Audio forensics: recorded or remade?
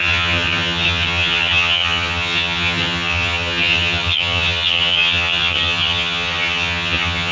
remade